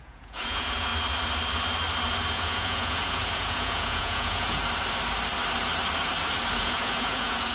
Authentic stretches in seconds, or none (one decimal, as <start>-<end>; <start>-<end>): 0.9-2.3; 4.6-6.6